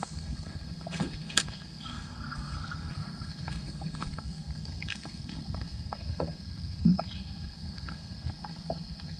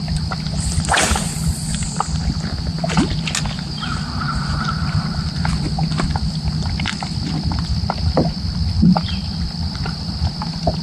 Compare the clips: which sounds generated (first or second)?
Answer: first